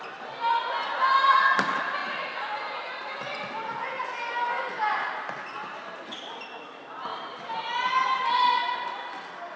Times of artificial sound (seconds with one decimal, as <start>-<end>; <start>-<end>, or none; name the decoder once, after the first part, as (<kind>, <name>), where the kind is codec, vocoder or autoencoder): none